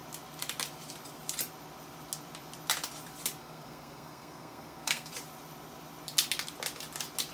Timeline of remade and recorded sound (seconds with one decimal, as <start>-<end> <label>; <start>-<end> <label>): 0.0-3.4 recorded; 3.4-5.1 remade; 5.1-7.3 recorded